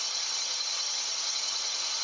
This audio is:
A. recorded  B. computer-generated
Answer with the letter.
A